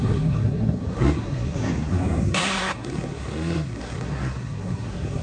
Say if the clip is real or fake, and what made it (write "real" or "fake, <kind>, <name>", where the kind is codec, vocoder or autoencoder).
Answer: fake, codec, SNAC